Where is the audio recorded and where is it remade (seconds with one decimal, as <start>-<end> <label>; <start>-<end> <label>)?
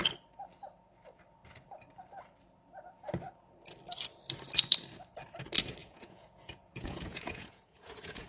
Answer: 0.0-5.8 recorded; 5.8-8.3 remade